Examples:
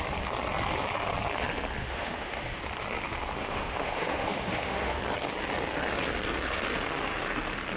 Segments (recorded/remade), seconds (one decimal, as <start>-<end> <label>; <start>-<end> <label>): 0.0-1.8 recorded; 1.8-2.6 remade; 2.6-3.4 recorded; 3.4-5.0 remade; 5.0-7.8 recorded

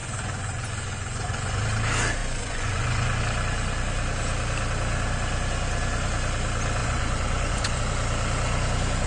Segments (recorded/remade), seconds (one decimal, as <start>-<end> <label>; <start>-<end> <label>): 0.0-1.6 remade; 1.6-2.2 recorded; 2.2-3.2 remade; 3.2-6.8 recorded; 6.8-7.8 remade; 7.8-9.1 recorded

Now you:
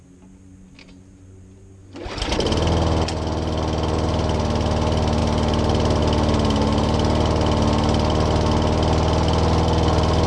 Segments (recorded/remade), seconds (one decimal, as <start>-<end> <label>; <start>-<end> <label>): 0.0-10.3 recorded

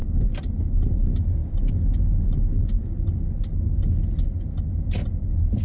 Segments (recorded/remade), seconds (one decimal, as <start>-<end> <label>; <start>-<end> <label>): 0.0-5.6 recorded

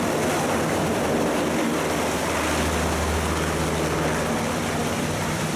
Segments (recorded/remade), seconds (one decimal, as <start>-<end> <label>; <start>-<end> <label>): 0.0-4.8 recorded; 4.8-5.6 remade

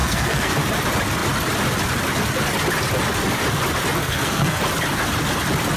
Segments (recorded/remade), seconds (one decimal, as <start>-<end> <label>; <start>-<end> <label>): 0.0-0.6 remade; 0.6-4.0 recorded; 4.0-4.6 remade; 4.6-5.8 recorded

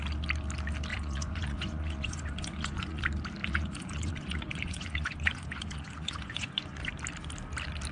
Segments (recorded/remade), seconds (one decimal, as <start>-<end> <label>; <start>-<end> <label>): 0.0-0.9 recorded; 0.9-3.0 remade; 3.0-3.4 recorded; 3.4-6.9 remade; 6.9-7.9 recorded